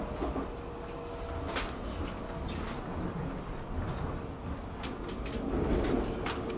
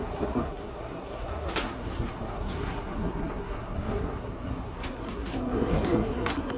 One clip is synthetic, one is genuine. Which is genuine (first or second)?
first